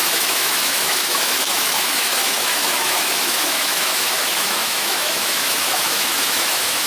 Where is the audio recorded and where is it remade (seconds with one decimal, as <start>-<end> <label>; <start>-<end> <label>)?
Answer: 0.0-6.9 remade